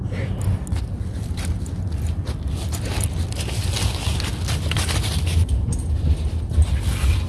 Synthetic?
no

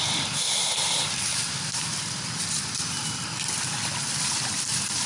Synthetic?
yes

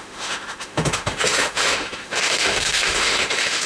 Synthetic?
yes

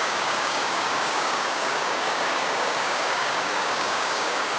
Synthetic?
yes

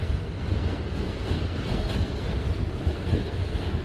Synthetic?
yes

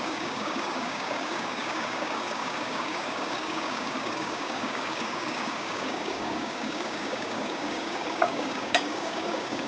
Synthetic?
yes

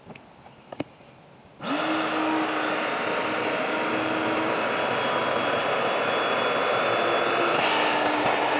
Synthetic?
no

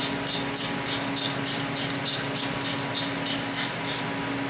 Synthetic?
no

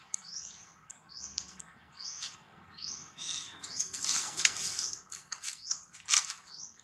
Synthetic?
yes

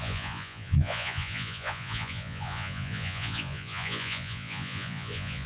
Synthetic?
yes